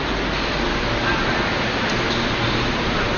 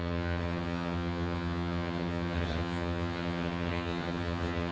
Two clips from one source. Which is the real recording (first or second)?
first